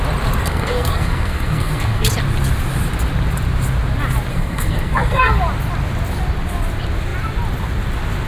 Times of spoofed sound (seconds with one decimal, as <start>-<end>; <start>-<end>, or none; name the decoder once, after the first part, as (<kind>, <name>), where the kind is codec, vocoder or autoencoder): 0.4-2.1 (codec, SNAC); 4.3-5.3